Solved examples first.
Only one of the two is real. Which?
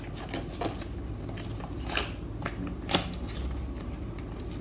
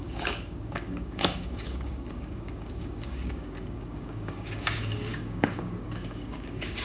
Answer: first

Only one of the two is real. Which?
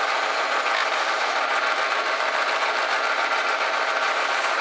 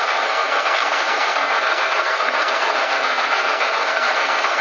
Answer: first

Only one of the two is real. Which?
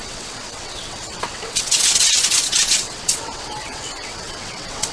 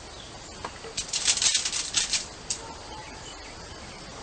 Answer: second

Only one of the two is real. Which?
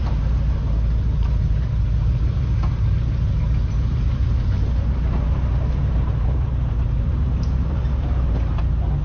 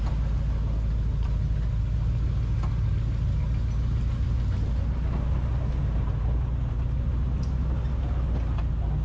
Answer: second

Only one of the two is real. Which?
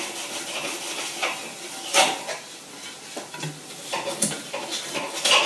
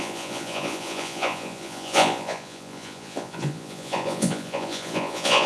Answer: first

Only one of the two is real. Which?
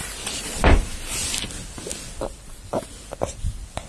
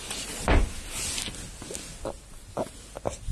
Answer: second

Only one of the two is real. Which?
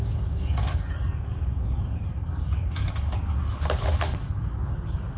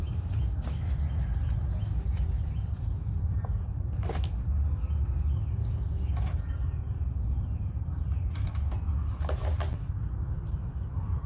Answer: second